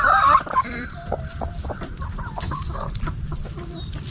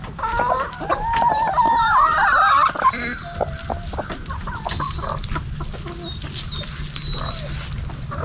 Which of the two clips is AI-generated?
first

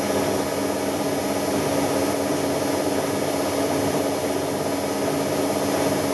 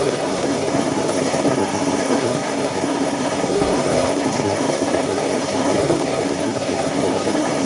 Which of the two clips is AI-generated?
second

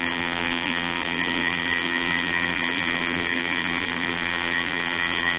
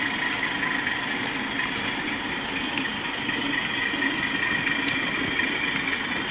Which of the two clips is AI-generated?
first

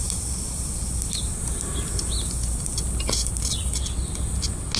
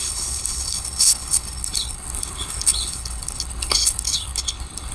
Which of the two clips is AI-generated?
second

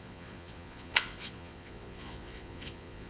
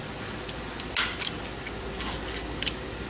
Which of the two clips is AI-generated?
first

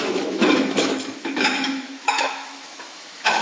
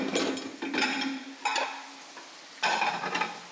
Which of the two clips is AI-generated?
first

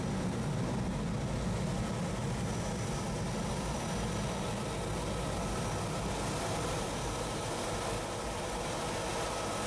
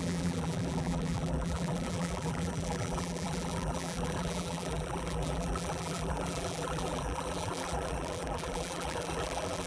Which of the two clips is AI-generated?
second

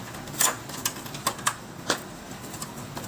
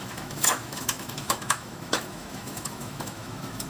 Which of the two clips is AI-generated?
second